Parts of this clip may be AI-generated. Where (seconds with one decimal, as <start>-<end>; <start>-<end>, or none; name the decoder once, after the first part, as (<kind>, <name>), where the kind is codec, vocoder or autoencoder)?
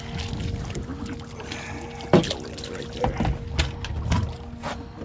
none